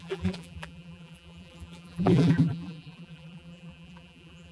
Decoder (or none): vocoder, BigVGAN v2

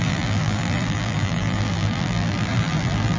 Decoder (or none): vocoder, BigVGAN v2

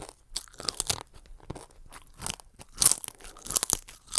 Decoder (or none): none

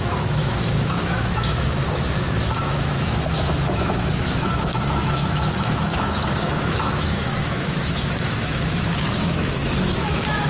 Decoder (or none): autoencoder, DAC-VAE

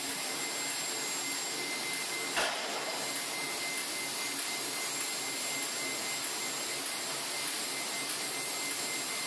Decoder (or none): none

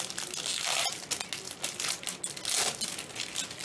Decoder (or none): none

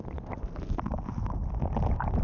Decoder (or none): none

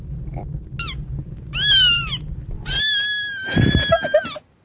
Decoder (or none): none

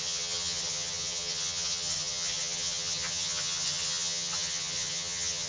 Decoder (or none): vocoder, HiFi-GAN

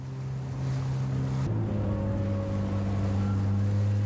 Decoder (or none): none